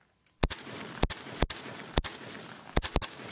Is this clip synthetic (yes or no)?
no